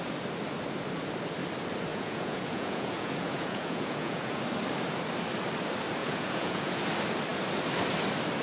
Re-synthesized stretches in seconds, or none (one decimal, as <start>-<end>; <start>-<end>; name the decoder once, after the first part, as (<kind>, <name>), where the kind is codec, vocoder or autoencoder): 1.9-4.4 (vocoder, Vocos); 6.0-6.8